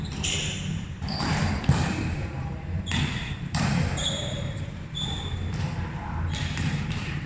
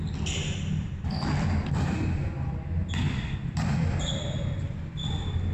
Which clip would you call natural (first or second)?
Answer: second